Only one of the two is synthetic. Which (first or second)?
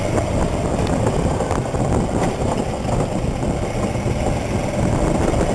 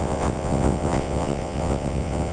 second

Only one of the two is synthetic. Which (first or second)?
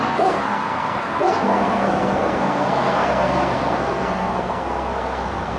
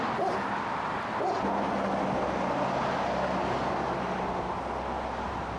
first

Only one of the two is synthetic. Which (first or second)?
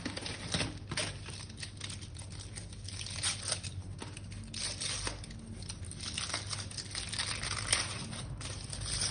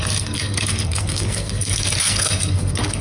second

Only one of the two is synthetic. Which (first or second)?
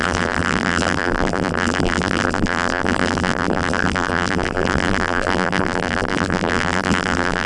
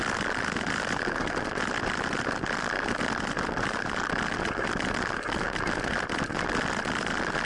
first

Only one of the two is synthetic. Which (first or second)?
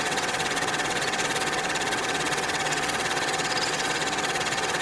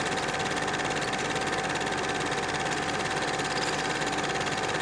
first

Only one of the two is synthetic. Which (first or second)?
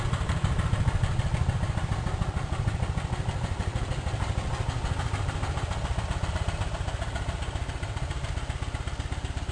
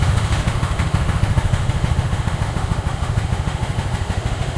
second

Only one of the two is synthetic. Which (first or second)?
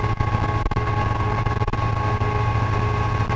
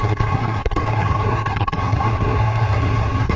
second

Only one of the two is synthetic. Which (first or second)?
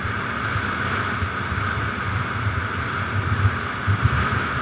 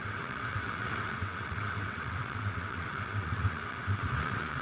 second